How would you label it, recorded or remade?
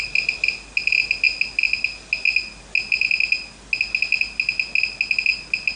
recorded